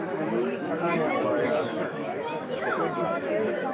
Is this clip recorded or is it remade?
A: remade